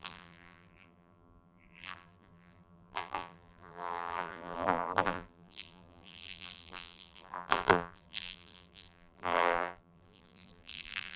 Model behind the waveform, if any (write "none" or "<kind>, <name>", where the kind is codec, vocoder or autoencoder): vocoder, BigVGAN v2